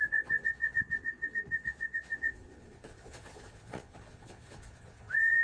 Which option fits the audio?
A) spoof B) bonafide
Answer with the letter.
A